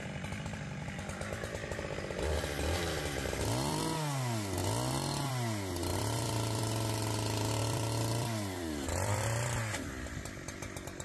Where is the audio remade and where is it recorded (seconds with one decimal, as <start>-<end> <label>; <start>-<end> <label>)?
0.0-3.8 remade; 3.8-5.9 recorded; 5.9-6.6 remade; 6.6-7.6 recorded; 7.6-10.4 remade; 10.4-11.0 recorded